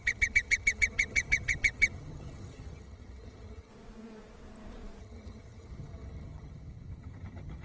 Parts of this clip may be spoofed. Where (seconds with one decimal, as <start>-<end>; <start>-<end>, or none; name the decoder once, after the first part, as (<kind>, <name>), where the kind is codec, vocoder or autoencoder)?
0.0-3.7 (vocoder, HiFi-GAN); 5.0-7.6